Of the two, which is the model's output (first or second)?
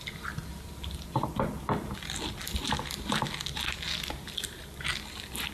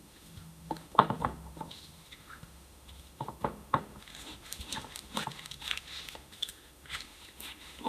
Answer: second